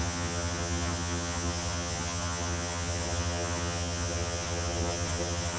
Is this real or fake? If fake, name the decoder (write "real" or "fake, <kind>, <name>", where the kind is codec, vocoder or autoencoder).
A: fake, vocoder, HiFi-GAN